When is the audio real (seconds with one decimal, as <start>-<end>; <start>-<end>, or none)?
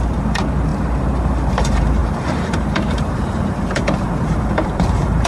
none